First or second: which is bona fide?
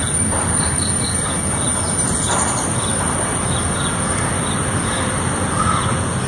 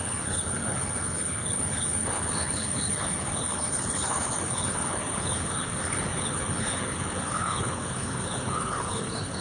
first